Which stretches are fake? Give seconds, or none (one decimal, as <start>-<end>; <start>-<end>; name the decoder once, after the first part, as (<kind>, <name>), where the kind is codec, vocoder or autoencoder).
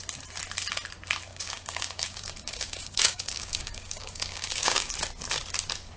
1.3-4.9 (codec, DAC)